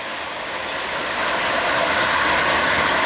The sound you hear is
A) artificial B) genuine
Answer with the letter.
B